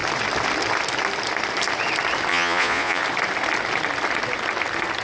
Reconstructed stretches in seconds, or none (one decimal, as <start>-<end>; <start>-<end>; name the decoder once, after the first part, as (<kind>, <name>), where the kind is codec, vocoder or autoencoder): 2.3-3.0 (vocoder, Vocos)